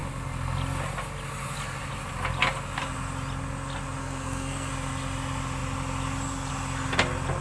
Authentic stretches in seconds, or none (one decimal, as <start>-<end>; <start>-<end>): 0.0-4.0; 4.7-7.4